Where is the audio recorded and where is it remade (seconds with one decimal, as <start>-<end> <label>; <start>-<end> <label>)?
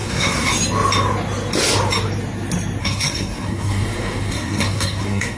0.0-0.5 remade; 0.5-2.8 recorded; 2.8-5.4 remade